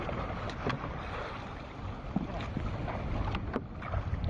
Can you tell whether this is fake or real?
real